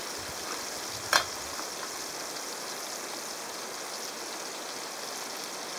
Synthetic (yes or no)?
no